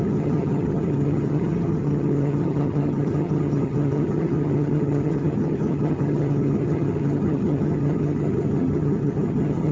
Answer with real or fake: fake